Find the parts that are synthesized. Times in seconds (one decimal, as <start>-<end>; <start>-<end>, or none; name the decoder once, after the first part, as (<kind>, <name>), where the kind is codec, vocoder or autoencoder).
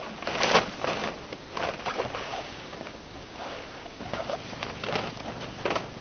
2.3-4.4 (codec, DAC)